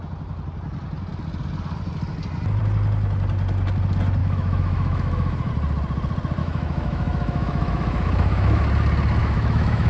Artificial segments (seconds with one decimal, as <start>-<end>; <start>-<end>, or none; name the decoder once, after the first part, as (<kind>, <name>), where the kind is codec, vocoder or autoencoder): 4.2-5.5 (autoencoder, DAC-VAE); 6.4-8.6; 9.2-9.9